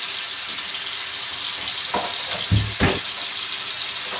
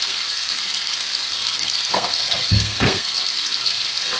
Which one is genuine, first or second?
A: first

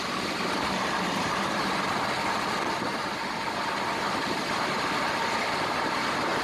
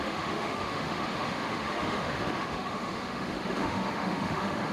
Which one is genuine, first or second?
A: first